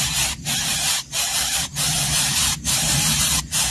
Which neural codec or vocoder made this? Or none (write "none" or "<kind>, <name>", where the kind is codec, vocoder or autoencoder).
none